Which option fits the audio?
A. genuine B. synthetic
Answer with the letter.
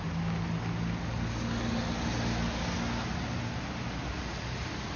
A